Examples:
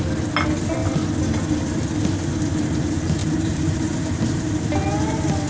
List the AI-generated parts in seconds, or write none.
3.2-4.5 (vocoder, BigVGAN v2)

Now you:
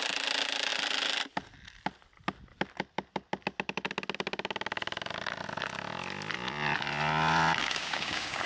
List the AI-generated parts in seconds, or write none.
7.6-8.5 (codec, DAC)

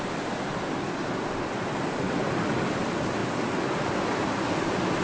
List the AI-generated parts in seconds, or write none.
none

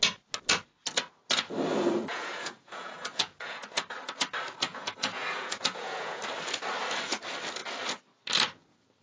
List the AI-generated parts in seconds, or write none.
2.1-3.6 (vocoder, Vocos); 4.7-6.2